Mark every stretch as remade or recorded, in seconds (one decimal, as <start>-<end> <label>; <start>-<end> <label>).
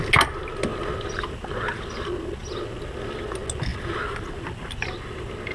0.0-5.5 recorded